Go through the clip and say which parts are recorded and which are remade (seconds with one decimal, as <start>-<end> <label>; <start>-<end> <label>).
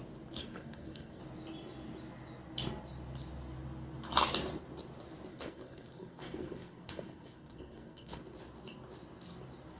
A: 0.0-0.4 recorded; 0.4-1.2 remade; 1.2-5.3 recorded; 5.3-8.2 remade; 8.2-9.8 recorded